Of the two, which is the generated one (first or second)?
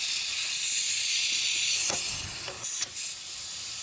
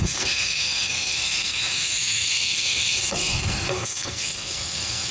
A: second